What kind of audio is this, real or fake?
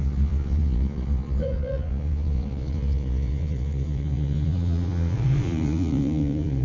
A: fake